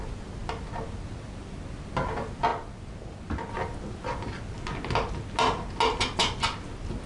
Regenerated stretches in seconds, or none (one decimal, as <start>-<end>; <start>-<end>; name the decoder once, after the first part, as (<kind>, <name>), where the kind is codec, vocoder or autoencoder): none